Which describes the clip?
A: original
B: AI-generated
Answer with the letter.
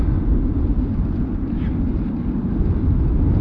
A